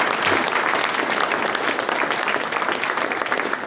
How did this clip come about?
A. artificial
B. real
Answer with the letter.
B